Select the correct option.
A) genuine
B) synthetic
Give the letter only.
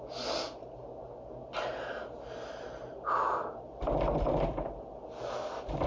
A